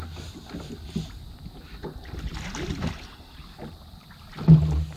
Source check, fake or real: real